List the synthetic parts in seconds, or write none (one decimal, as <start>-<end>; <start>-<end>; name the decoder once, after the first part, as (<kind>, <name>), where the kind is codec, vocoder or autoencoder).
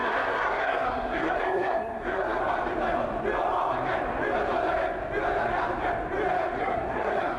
0.0-2.4 (codec, SNAC); 6.6-7.4